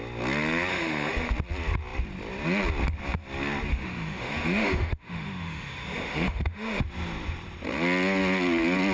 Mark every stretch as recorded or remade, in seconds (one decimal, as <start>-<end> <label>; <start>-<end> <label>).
0.0-0.7 recorded; 0.7-1.3 remade; 1.3-3.7 recorded; 3.7-6.8 remade; 6.8-8.9 recorded